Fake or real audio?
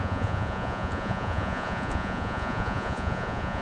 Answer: fake